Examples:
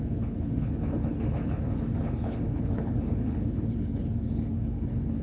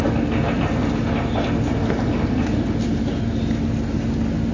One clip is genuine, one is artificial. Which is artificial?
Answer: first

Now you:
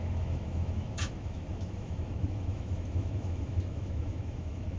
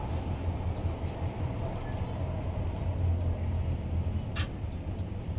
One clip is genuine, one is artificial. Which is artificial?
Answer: first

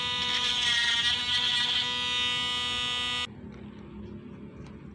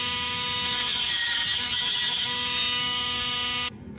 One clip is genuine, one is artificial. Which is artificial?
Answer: second